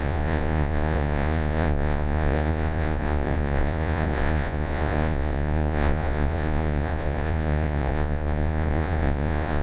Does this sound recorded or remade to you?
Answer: remade